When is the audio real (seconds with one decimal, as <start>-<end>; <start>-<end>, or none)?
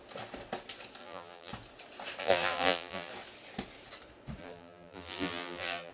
0.0-1.0; 1.5-2.2; 3.1-4.4